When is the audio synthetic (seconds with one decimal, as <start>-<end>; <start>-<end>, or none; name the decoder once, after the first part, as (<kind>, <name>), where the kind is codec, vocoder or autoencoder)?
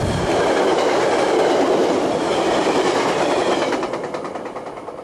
1.8-2.3 (vocoder, BigVGAN v2)